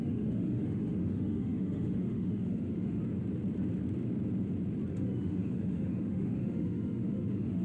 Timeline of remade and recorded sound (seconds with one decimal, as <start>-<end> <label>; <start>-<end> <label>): 0.0-3.0 remade; 3.0-4.9 recorded; 4.9-7.6 remade